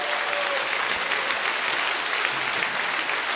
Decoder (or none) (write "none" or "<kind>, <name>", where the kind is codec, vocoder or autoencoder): none